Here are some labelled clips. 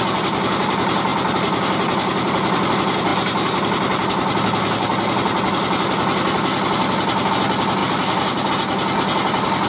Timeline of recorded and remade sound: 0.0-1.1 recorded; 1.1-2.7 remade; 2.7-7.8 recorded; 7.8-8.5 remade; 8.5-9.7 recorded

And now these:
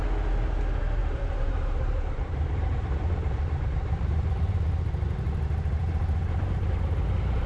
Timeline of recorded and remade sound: 0.0-1.0 recorded; 1.0-4.7 remade; 4.7-7.5 recorded

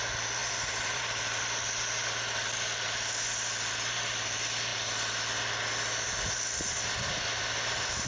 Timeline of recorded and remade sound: 0.0-0.4 recorded; 0.4-3.7 remade; 3.7-8.1 recorded

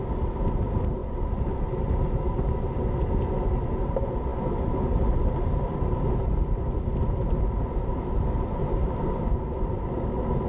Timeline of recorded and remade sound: 0.0-8.6 recorded; 8.6-9.7 remade; 9.7-10.5 recorded